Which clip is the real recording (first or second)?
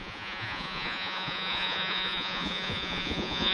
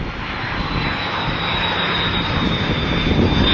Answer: second